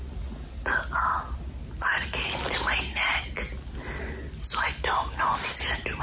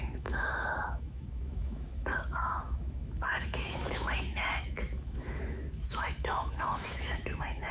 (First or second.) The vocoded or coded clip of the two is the second